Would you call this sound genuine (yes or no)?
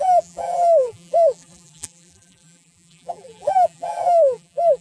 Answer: no